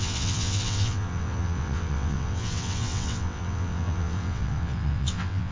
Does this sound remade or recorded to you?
remade